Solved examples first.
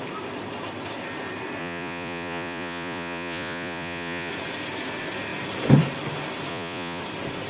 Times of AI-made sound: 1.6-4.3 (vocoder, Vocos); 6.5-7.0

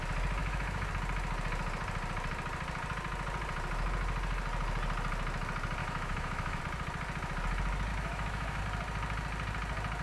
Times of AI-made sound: 0.4-0.9 (autoencoder, DAC-VAE); 5.8-6.6; 7.9-8.6